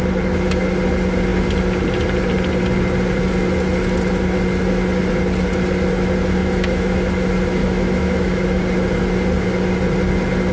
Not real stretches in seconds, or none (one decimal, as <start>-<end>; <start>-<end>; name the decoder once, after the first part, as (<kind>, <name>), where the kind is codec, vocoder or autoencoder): 6.4-7.1 (autoencoder, DAC-VAE); 7.6-8.6